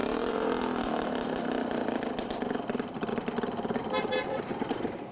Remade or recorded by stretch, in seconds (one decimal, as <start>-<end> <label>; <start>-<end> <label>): 0.0-5.1 remade